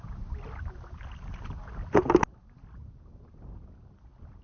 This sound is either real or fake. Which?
real